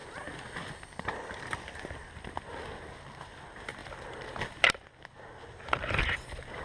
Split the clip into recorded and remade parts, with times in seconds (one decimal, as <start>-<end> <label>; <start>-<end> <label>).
0.0-6.6 recorded